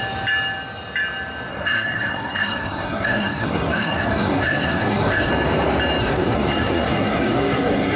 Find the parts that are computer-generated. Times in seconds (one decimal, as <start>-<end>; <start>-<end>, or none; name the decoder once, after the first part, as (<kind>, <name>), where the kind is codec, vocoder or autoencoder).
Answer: 1.5-5.3 (codec, SNAC); 6.0-8.0